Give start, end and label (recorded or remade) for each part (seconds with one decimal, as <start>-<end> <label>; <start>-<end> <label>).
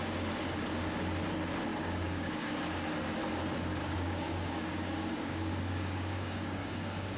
0.0-1.7 recorded; 1.7-2.5 remade; 2.5-3.8 recorded; 3.8-7.2 remade